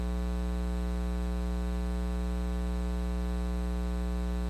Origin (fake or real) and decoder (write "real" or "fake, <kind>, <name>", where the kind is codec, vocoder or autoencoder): real